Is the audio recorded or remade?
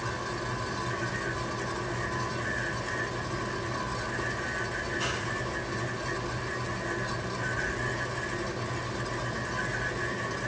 recorded